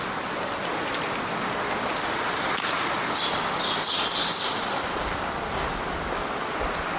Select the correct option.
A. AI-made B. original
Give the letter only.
B